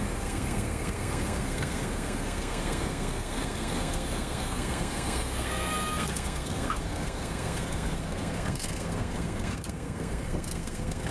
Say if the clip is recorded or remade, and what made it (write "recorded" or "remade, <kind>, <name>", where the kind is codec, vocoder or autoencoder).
remade, codec, SNAC